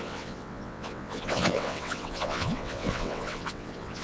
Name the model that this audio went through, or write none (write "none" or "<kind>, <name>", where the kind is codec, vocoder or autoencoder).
vocoder, WaveNeXt